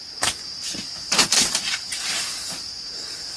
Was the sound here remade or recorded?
remade